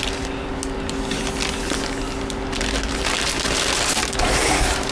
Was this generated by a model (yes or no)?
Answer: no